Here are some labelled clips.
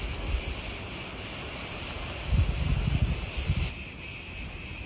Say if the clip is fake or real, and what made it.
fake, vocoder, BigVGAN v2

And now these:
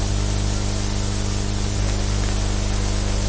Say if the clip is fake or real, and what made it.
real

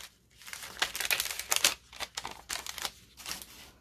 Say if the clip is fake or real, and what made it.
real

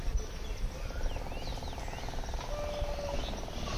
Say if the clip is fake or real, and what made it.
real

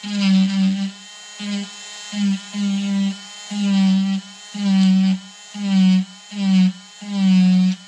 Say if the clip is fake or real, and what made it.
real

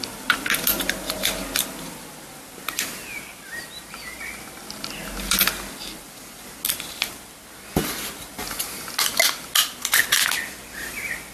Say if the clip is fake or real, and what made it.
real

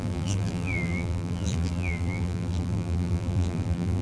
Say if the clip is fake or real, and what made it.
fake, vocoder, BigVGAN v2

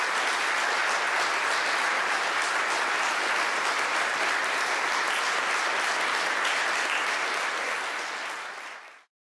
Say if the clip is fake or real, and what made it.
real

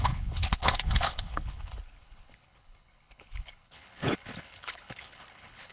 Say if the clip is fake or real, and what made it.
fake, codec, HILCodec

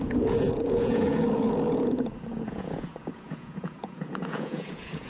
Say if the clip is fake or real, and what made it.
fake, vocoder, Vocos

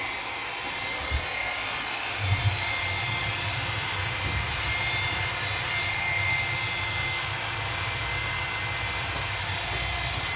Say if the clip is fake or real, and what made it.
real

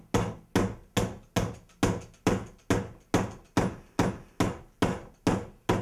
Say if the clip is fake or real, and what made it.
real